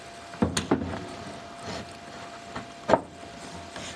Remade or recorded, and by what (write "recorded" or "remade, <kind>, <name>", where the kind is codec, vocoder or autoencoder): recorded